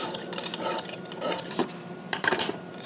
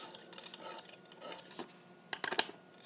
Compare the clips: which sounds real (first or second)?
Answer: second